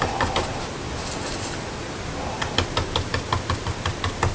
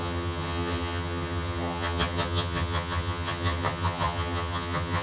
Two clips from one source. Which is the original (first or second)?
first